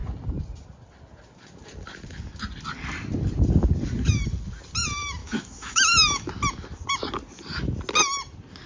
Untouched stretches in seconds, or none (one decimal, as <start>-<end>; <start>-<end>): 0.0-5.2; 6.3-8.7

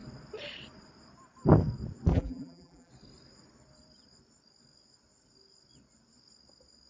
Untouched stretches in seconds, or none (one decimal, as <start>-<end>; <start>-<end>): 0.0-2.1; 2.9-6.9